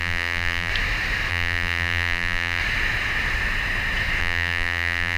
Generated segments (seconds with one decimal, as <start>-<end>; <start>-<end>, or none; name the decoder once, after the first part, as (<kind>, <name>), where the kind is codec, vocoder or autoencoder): 0.0-0.7 (vocoder, BigVGAN v2); 1.3-2.6; 4.2-5.2